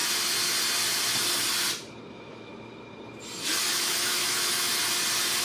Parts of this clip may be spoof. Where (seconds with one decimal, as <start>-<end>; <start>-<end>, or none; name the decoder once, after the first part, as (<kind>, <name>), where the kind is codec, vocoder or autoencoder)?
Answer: 2.1-2.5 (autoencoder, DAC-VAE); 3.7-4.7